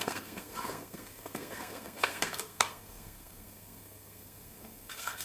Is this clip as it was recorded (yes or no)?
no